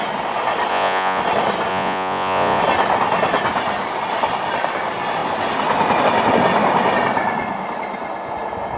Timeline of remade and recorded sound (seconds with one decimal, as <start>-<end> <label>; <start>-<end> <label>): 0.0-0.7 recorded; 0.7-1.2 remade; 1.2-1.7 recorded; 1.7-2.6 remade; 2.6-8.8 recorded